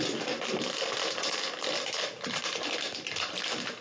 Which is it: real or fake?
real